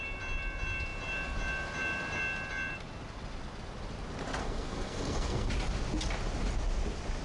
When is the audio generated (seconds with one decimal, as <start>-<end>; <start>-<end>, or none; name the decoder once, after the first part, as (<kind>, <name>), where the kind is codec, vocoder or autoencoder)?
4.4-5.5 (codec, SNAC)

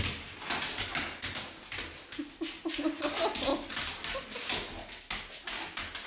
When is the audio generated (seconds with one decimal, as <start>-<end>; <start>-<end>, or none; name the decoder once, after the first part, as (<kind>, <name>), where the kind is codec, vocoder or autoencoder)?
none

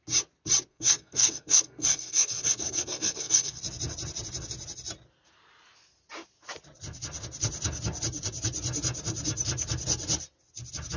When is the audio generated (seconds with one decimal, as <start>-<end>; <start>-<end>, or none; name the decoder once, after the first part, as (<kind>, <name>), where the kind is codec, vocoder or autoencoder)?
0.7-3.6 (codec, SNAC)

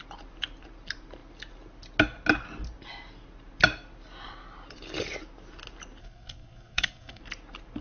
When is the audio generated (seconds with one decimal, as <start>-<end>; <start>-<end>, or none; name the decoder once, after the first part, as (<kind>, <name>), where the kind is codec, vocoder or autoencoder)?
6.0-7.2 (codec, SNAC)